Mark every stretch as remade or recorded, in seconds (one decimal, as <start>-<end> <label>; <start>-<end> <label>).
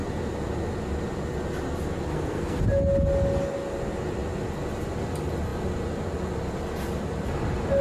0.0-2.1 recorded; 2.1-2.6 remade; 2.6-7.8 recorded